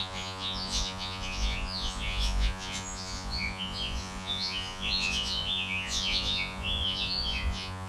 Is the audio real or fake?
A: fake